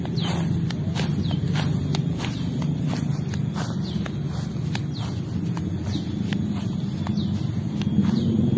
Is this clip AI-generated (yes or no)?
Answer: no